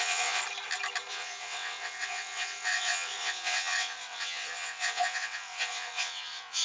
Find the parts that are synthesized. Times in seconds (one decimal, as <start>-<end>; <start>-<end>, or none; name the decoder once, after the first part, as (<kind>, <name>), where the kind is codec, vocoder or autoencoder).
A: 0.0-0.4 (vocoder, WaveNeXt); 1.1-6.6